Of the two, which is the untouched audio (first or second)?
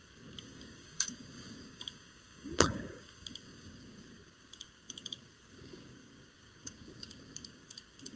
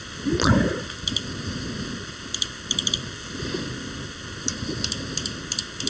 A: second